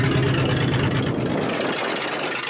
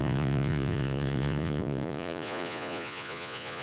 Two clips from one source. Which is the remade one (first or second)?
second